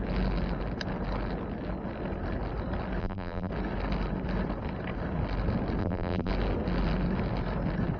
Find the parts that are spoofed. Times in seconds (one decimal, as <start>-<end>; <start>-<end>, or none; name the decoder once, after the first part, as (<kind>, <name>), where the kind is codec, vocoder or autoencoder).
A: 3.0-3.5 (vocoder, BigVGAN v2); 5.8-6.3